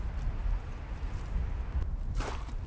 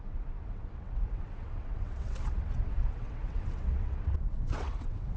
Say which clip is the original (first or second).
first